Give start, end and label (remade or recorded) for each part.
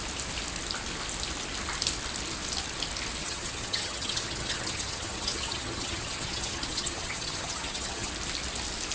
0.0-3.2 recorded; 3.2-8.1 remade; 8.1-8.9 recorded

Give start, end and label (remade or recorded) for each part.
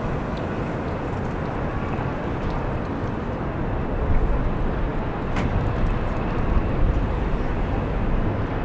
0.0-8.6 recorded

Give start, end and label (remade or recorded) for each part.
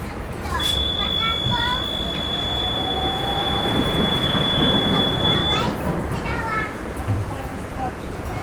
0.0-1.0 remade; 1.0-2.3 recorded; 2.3-5.4 remade; 5.4-6.2 recorded; 6.2-8.4 remade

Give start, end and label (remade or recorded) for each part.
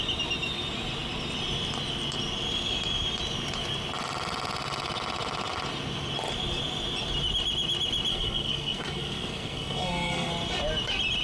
0.0-8.1 recorded; 8.1-10.3 remade; 10.3-11.2 recorded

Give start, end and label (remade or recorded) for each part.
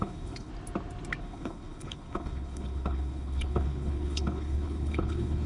0.0-0.5 remade; 0.5-1.2 recorded; 1.2-5.5 remade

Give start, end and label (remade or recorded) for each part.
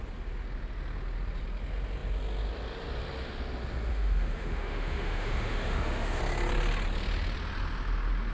0.0-3.9 recorded; 3.9-6.2 remade; 6.2-8.3 recorded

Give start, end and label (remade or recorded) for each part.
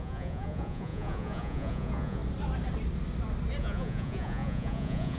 0.0-2.2 remade; 2.2-3.6 recorded; 3.6-5.2 remade